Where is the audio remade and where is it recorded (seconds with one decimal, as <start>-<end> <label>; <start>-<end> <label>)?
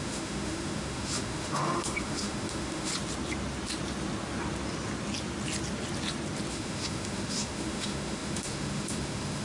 0.0-2.9 remade; 2.9-6.5 recorded; 6.5-9.4 remade